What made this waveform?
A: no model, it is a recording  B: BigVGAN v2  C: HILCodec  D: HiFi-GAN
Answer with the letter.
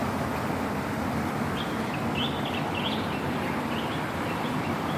A